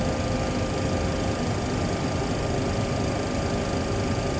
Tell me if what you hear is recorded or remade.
recorded